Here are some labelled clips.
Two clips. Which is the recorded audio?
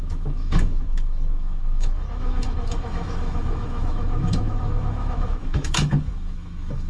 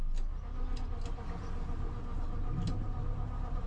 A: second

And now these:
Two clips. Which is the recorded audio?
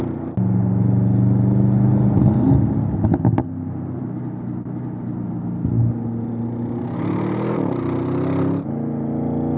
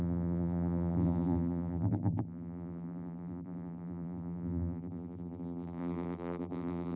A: first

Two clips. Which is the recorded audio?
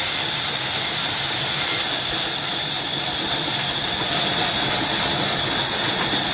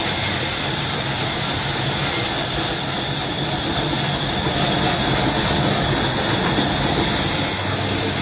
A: second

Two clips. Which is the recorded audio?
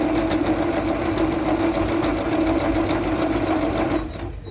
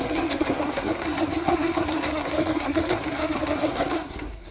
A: first